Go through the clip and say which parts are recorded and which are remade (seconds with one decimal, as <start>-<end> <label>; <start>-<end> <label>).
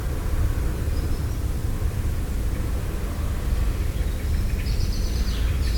0.0-1.6 remade; 1.6-4.3 recorded; 4.3-5.8 remade